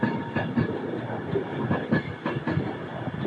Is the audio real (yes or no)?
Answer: yes